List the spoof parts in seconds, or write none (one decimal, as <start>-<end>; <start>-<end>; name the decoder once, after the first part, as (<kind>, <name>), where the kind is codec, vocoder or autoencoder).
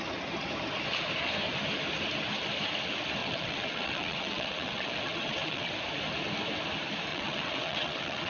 3.2-5.7 (vocoder, WaveNeXt); 7.1-8.3